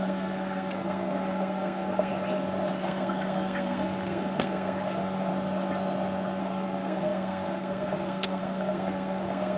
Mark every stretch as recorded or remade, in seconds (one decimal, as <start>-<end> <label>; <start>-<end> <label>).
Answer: 0.0-2.1 remade; 2.1-2.8 recorded; 2.8-5.3 remade; 5.3-6.4 recorded; 6.4-9.6 remade